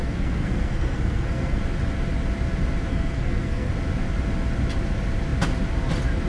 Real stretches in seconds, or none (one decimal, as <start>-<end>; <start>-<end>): 1.6-2.9; 3.7-6.3